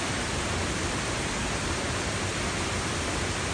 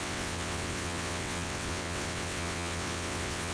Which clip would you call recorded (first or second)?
first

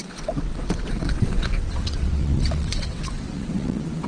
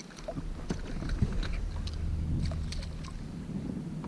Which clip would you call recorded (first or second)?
second